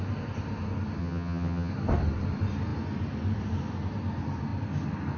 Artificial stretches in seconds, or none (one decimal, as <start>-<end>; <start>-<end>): 1.0-1.7